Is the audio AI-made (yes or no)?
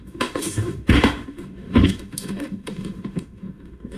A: yes